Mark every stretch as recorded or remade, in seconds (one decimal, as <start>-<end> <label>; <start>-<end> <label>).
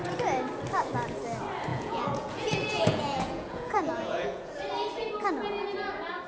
0.0-1.7 recorded; 1.7-4.5 remade; 4.5-6.3 recorded